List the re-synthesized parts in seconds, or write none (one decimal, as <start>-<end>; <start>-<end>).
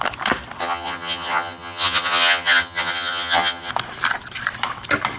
0.6-3.7